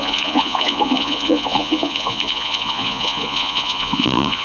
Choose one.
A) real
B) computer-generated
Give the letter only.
B